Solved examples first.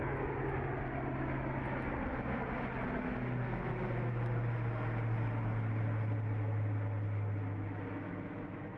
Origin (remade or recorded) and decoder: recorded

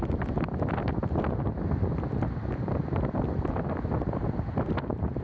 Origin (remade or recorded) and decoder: remade, vocoder, BigVGAN v2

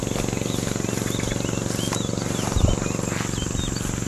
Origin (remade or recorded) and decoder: recorded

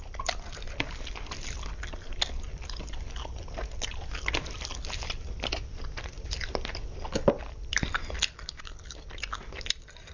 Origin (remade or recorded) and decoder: recorded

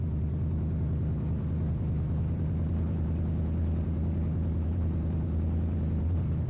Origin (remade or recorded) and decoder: remade, vocoder, BigVGAN v2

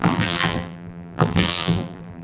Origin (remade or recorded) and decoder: remade, vocoder, BigVGAN v2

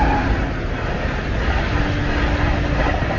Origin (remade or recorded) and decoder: recorded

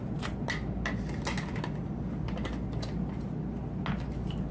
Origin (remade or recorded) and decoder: recorded